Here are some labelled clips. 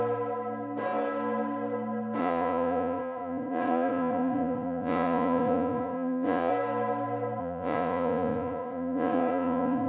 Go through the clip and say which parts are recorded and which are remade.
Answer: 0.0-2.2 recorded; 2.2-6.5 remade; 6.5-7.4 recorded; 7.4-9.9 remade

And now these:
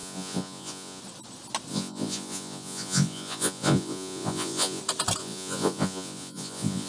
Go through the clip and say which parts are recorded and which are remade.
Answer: 0.0-1.0 remade; 1.0-1.7 recorded; 1.7-4.8 remade; 4.8-5.2 recorded; 5.2-6.9 remade

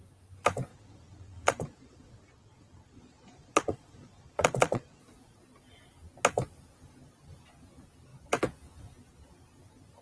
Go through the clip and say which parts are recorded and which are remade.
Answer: 0.0-0.7 recorded; 0.7-5.0 remade; 5.0-10.0 recorded

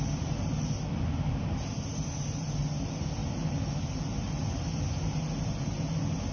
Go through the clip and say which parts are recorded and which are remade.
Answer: 0.0-6.3 recorded

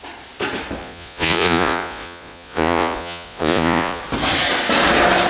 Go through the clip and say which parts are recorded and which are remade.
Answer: 0.0-0.8 recorded; 0.8-4.0 remade; 4.0-5.3 recorded